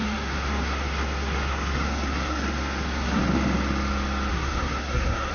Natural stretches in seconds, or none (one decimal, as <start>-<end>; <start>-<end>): 3.2-4.3